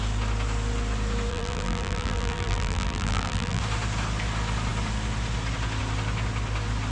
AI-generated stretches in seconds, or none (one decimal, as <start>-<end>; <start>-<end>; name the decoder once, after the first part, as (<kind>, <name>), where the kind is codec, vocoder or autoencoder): 1.3-3.6 (vocoder, BigVGAN v2)